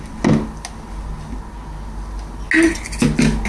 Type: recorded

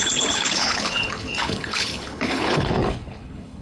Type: remade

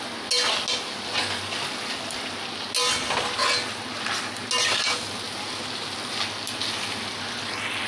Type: recorded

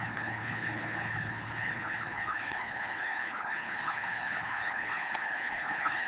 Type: remade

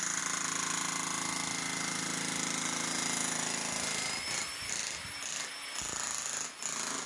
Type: recorded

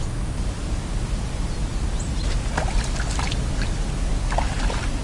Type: recorded